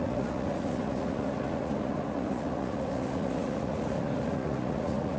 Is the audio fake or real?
fake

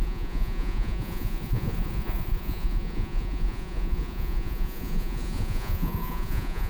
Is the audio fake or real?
fake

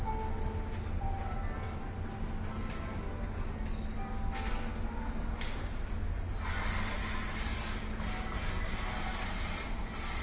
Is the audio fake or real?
real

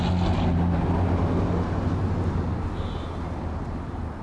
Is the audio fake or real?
real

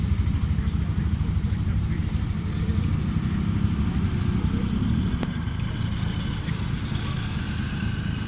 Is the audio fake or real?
real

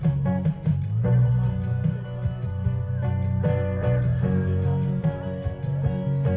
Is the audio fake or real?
real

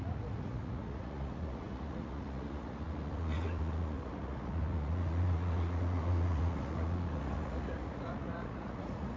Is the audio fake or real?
fake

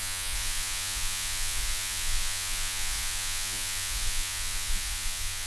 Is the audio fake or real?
fake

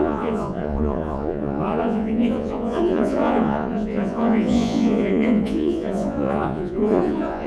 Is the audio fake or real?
fake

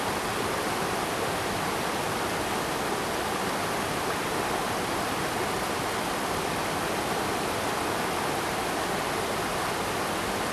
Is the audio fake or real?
real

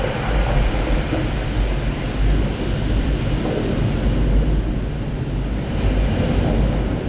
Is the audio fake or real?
real